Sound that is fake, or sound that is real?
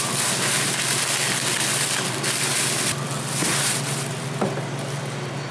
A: real